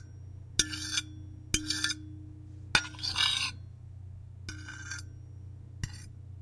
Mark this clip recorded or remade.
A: recorded